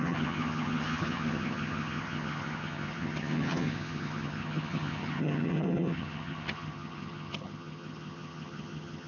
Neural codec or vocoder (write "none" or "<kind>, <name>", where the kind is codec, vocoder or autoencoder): vocoder, HiFi-GAN